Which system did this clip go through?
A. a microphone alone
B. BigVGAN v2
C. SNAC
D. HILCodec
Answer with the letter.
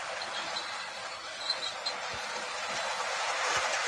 A